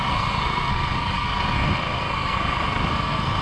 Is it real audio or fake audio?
fake